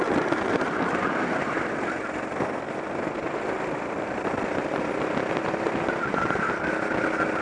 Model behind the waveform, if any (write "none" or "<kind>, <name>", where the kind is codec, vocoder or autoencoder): none